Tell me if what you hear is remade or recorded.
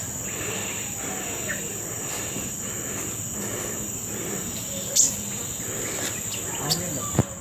recorded